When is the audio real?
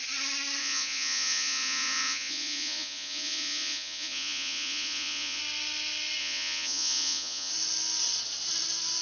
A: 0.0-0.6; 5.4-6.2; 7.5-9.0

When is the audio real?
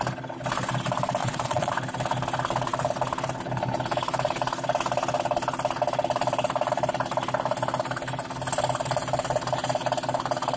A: 0.0-1.2; 1.7-10.6